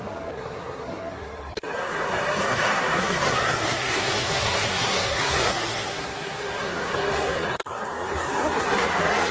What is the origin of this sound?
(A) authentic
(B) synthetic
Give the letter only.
B